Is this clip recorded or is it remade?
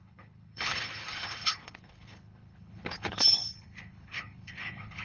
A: remade